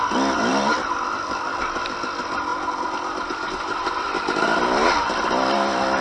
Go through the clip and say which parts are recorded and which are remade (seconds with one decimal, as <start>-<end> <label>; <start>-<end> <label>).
0.0-0.5 recorded; 0.5-1.6 remade; 1.6-6.0 recorded